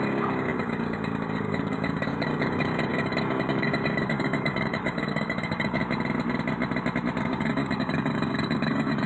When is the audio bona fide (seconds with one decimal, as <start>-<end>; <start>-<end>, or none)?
5.8-7.2